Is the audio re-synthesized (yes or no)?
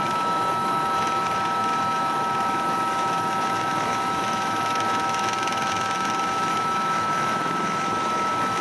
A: yes